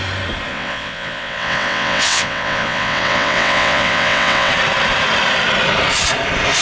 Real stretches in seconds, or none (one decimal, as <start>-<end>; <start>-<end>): 0.0-0.5; 4.5-6.6